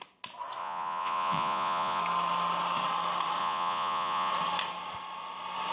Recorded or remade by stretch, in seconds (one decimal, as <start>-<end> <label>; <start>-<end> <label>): 0.0-0.6 recorded; 0.6-2.0 remade; 2.0-3.4 recorded; 3.4-4.3 remade; 4.3-5.7 recorded